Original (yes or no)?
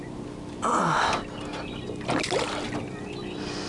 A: yes